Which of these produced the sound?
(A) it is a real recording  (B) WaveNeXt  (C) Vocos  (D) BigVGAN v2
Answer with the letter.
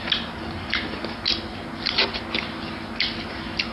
A